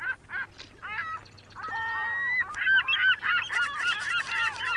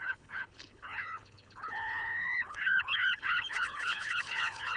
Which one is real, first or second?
first